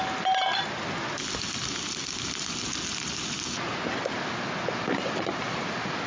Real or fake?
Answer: real